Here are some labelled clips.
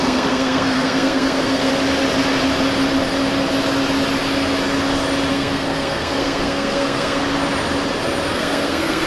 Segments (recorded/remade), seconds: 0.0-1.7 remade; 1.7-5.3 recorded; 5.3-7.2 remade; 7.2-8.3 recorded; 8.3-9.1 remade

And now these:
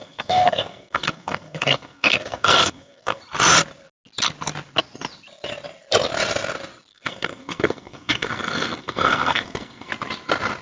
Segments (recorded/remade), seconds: 0.0-3.2 remade; 3.2-6.9 recorded; 6.9-9.9 remade; 9.9-10.6 recorded